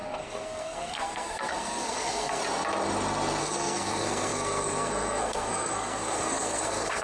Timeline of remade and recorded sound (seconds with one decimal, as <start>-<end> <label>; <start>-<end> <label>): 0.0-2.4 remade; 2.4-3.4 recorded; 3.4-7.0 remade